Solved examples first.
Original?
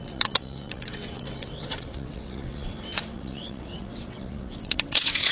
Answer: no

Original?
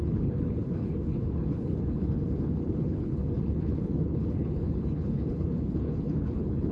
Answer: no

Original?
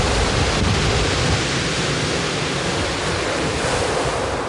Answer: yes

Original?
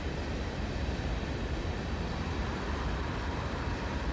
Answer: yes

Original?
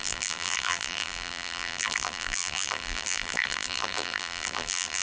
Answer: no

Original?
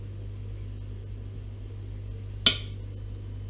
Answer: yes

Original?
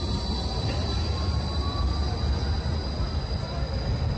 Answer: yes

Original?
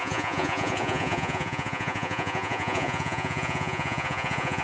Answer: no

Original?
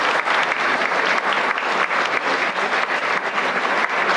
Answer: yes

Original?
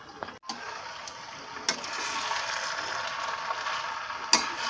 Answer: yes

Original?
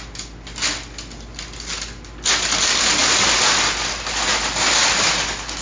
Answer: yes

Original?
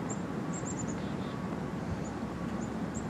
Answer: no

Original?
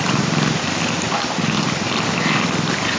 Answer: yes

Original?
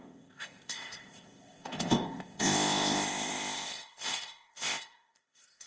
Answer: no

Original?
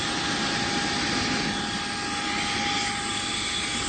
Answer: yes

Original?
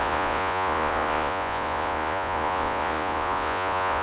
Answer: no